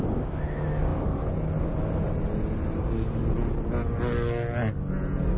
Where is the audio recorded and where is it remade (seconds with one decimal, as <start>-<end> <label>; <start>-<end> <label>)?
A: 0.0-5.4 recorded

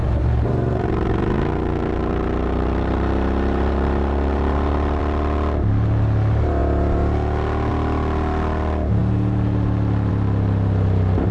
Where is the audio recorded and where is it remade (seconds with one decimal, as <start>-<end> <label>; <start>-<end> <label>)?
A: 0.0-5.0 remade; 5.0-11.3 recorded

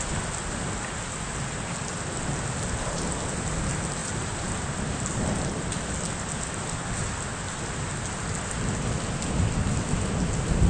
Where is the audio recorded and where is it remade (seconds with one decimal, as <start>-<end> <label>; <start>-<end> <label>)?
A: 0.0-4.0 recorded; 4.0-4.5 remade; 4.5-10.7 recorded

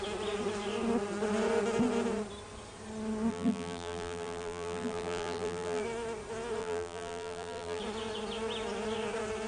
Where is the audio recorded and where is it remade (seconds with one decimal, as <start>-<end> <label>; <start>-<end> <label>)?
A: 0.0-3.3 recorded; 3.3-5.8 remade; 5.8-6.6 recorded; 6.6-7.8 remade; 7.8-9.5 recorded

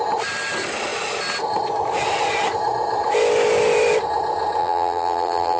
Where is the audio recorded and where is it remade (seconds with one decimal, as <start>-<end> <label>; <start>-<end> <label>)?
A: 0.0-4.6 recorded; 4.6-5.6 remade

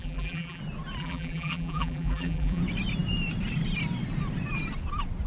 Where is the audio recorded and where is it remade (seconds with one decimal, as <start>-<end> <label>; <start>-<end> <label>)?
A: 0.0-0.6 remade; 0.6-1.0 recorded; 1.0-2.6 remade; 2.6-5.3 recorded

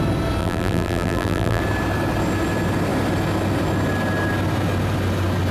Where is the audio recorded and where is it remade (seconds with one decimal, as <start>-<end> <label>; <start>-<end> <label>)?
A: 0.0-0.4 recorded; 0.4-1.6 remade; 1.6-5.5 recorded

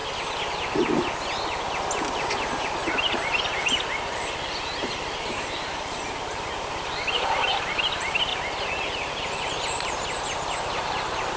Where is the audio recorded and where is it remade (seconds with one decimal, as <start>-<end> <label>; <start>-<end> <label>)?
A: 0.0-3.4 recorded; 3.4-8.3 remade; 8.3-9.3 recorded; 9.3-11.4 remade